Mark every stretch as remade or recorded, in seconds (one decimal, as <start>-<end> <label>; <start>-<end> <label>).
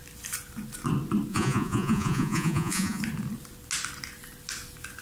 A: 0.0-1.3 recorded; 1.3-3.0 remade; 3.0-5.0 recorded